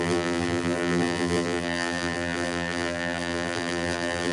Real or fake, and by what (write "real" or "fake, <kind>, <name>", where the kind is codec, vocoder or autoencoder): fake, vocoder, BigVGAN v2